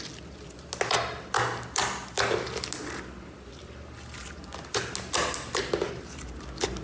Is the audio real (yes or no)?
yes